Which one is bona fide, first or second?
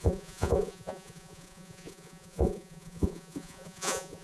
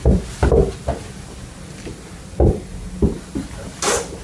second